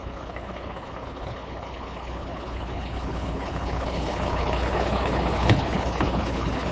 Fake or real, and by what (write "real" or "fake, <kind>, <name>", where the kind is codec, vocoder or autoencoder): fake, codec, HILCodec